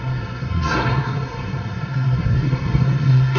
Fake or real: fake